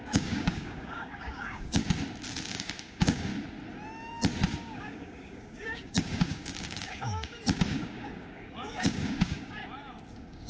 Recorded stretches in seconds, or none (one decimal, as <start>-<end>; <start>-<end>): 1.8-2.5; 3.3-4.6; 9.6-10.1